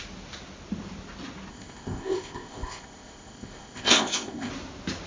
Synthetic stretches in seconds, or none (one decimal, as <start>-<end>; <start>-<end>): 1.5-4.5